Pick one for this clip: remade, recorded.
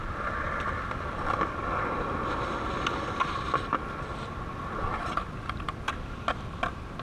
recorded